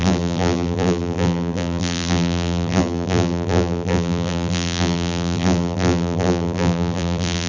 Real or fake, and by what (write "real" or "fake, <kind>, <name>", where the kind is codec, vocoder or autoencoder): fake, vocoder, BigVGAN v2